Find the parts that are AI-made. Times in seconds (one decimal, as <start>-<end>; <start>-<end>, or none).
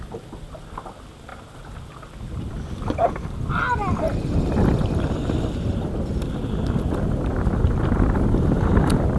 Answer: none